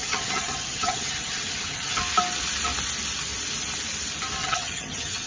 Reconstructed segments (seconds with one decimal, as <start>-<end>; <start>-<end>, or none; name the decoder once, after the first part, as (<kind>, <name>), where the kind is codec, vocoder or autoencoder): 0.0-2.0 (vocoder, HiFi-GAN); 4.4-5.3